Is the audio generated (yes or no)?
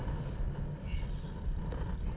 no